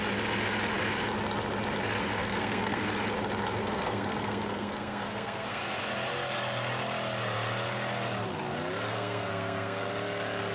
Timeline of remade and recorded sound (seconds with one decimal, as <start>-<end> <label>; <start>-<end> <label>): 0.0-2.2 recorded; 2.2-2.8 remade; 2.8-3.6 recorded; 3.6-5.6 remade; 5.6-8.9 recorded; 8.9-9.9 remade; 9.9-10.5 recorded